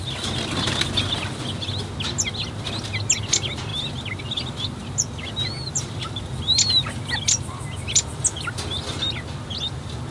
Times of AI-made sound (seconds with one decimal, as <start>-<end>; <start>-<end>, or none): none